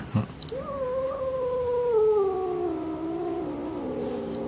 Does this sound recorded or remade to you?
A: recorded